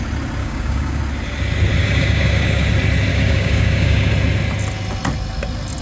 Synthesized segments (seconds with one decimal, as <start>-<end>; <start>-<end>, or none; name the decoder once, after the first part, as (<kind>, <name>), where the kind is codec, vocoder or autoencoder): 0.4-1.0 (codec, DAC); 1.8-2.7; 3.1-4.1

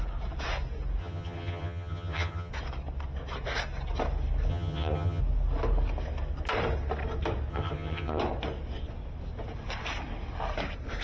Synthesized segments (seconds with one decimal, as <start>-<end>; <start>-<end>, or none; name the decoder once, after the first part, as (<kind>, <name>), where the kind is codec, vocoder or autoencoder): 1.0-2.5 (vocoder, HiFi-GAN); 4.5-5.2; 7.5-8.2